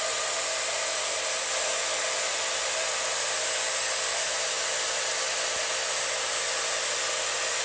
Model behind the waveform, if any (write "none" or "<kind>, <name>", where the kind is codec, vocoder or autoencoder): none